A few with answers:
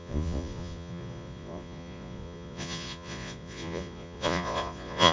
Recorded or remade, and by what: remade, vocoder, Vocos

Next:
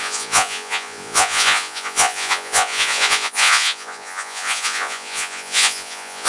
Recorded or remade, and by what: remade, vocoder, Vocos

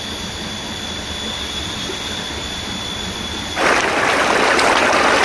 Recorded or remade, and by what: recorded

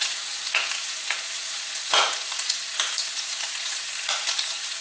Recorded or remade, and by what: remade, vocoder, Vocos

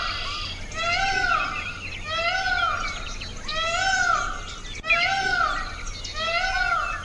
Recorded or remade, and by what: recorded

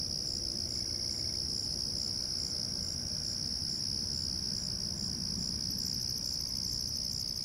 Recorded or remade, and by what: recorded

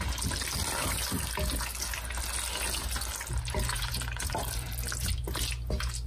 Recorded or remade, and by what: recorded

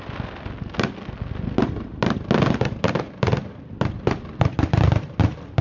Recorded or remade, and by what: recorded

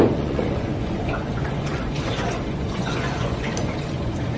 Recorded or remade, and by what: remade, vocoder, Vocos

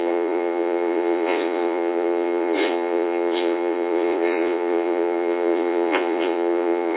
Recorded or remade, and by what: remade, vocoder, Vocos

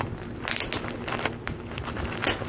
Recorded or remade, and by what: recorded